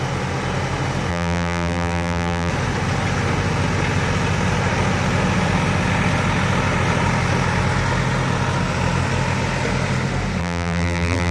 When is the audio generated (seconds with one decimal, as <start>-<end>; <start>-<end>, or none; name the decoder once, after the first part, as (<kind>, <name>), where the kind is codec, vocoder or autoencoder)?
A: 1.1-2.5 (vocoder, BigVGAN v2); 10.4-11.3